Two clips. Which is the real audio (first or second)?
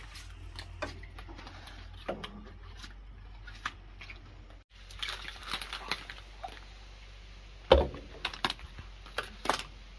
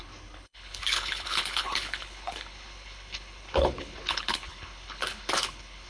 first